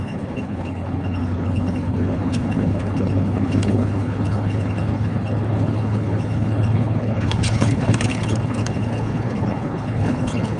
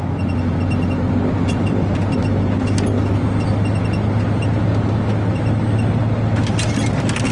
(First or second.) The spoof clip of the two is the first